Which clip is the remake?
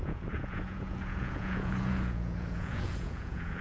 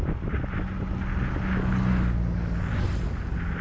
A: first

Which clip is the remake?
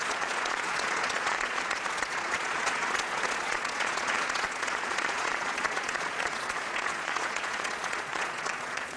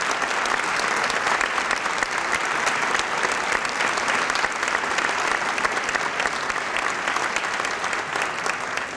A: first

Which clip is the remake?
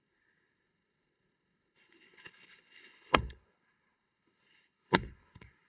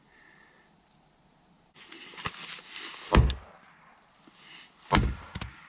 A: first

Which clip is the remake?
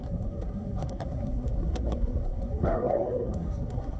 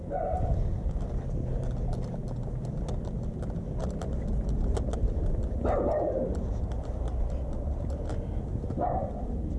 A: first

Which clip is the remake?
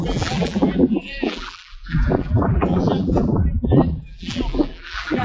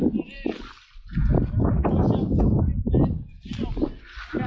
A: first